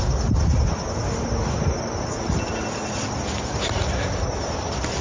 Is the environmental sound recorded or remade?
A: recorded